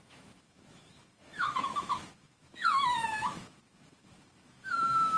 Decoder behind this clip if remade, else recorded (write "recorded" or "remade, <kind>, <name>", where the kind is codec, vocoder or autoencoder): remade, autoencoder, DAC-VAE